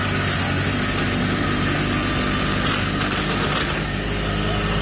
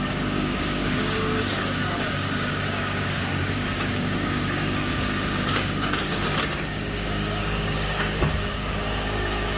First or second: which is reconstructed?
second